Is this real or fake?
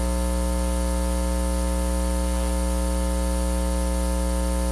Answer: real